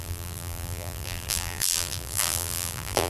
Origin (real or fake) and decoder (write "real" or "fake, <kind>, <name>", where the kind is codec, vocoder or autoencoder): fake, vocoder, BigVGAN v2